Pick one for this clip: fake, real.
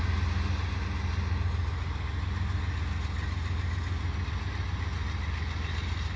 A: real